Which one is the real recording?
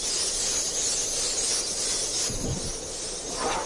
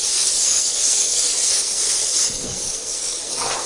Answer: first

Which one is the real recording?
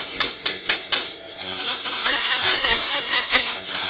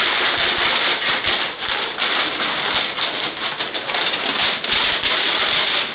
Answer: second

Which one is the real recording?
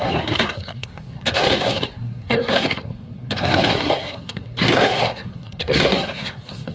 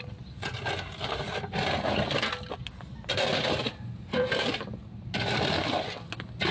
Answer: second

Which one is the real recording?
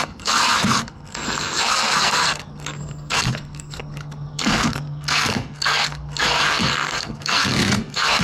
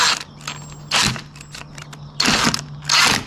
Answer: second